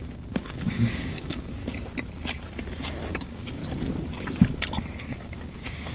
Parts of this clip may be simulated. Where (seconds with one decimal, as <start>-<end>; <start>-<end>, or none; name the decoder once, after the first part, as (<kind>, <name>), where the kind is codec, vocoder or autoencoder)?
0.0-1.6 (codec, DAC); 3.1-3.6; 5.0-5.9

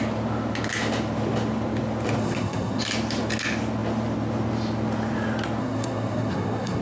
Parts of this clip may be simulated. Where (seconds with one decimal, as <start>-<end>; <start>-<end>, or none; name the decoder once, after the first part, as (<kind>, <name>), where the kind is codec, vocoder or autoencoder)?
2.2-2.8 (codec, SNAC); 5.6-6.8

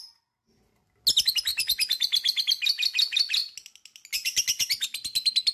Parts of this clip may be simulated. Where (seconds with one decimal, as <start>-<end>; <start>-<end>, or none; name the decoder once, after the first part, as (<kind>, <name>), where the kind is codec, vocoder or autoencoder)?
none

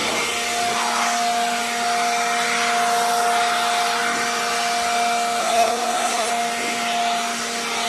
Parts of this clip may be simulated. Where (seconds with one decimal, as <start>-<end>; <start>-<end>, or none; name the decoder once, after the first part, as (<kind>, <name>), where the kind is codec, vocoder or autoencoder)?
5.4-6.3 (codec, SNAC)

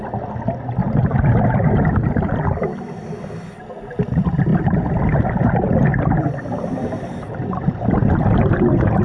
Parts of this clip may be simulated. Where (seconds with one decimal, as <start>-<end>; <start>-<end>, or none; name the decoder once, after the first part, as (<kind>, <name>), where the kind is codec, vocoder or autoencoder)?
none